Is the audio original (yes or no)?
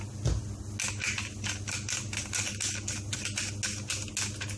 yes